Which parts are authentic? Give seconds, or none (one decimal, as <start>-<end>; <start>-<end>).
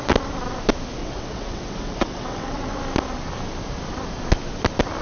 0.0-1.0; 2.8-5.0